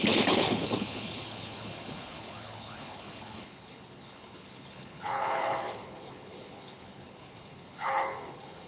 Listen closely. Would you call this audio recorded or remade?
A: remade